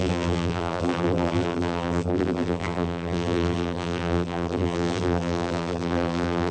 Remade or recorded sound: remade